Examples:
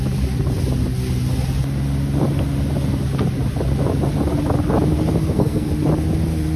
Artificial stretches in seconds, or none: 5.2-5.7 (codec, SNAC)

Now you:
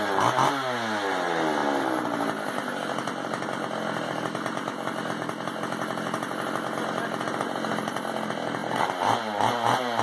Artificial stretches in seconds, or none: none

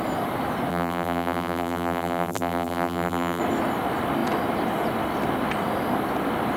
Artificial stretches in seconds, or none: 0.7-3.4 (vocoder, BigVGAN v2)

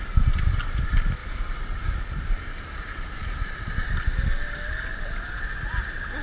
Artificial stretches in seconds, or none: none

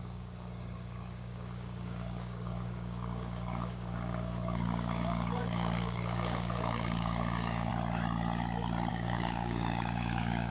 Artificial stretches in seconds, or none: 0.0-7.7 (codec, DAC); 8.9-10.5

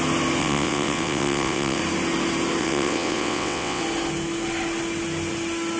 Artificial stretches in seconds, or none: 0.4-1.8 (vocoder, WaveNeXt); 2.6-3.8